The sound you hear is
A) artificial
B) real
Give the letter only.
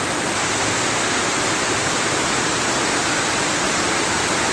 B